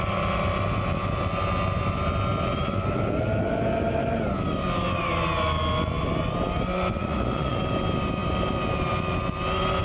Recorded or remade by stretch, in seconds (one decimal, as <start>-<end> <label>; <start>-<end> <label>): 0.0-7.0 recorded; 7.0-7.6 remade; 7.6-9.8 recorded